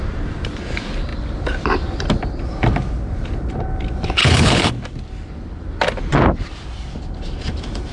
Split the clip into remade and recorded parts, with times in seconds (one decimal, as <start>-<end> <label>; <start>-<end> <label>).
0.0-4.2 recorded; 4.2-4.7 remade; 4.7-7.9 recorded